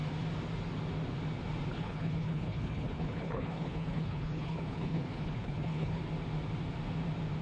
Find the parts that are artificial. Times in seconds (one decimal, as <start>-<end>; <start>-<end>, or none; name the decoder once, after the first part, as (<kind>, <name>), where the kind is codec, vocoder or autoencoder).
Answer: 1.7-6.0 (codec, HILCodec)